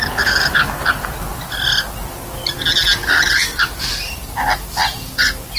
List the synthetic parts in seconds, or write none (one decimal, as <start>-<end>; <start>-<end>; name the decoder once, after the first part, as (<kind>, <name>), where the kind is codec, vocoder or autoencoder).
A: 2.9-4.7 (vocoder, BigVGAN v2)